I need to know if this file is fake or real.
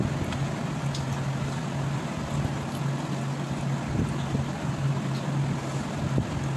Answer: real